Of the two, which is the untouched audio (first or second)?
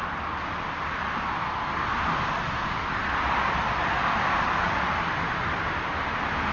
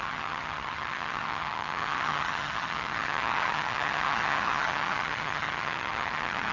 first